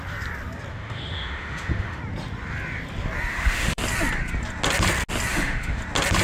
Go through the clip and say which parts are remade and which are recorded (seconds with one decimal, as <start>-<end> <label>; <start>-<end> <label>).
0.0-0.7 recorded; 0.7-2.0 remade; 2.0-3.3 recorded; 3.3-3.8 remade; 3.8-5.3 recorded; 5.3-5.8 remade; 5.8-6.2 recorded